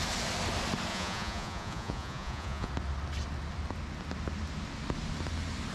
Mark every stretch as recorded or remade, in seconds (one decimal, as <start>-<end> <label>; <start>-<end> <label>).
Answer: 0.0-0.9 recorded; 0.9-2.7 remade; 2.7-5.7 recorded